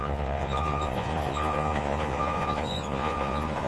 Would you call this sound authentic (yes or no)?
no